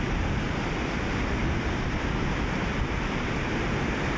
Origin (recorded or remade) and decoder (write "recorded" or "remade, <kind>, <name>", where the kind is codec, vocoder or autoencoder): recorded